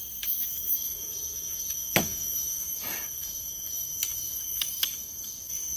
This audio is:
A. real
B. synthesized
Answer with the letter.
B